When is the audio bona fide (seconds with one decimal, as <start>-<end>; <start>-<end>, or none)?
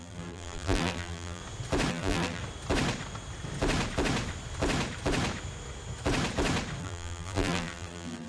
1.4-1.9; 2.4-6.8